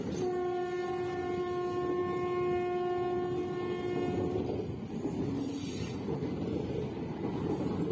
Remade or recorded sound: recorded